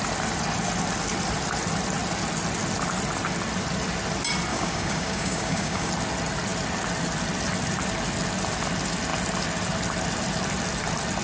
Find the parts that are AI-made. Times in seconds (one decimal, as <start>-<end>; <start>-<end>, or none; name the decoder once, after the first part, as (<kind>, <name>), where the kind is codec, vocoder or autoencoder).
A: 4.5-5.9 (codec, DAC)